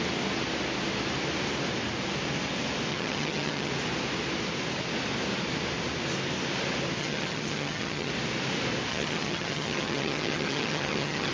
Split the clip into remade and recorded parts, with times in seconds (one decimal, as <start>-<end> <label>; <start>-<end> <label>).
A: 0.0-2.9 recorded; 2.9-3.7 remade; 3.7-7.0 recorded; 7.0-8.1 remade; 8.1-8.9 recorded; 8.9-11.3 remade